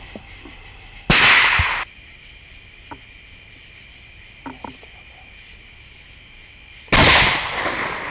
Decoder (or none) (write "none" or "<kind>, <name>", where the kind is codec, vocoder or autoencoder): none